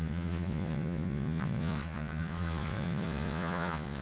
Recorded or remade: remade